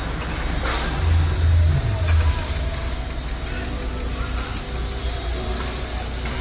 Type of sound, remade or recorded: recorded